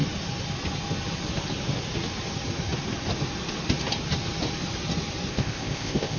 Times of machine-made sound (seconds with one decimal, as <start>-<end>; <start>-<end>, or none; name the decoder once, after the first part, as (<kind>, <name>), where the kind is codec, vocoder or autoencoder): 5.3-6.2 (codec, ZipCodec)